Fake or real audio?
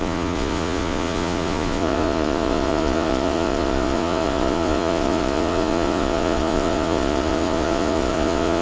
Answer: fake